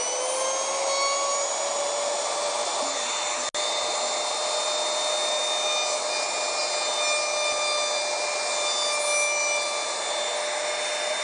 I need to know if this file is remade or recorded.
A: recorded